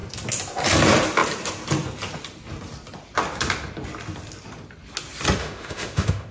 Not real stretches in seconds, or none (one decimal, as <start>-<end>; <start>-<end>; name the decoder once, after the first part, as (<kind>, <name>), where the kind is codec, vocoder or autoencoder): 5.4-6.3 (autoencoder, DAC-VAE)